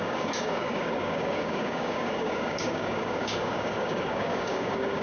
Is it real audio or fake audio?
fake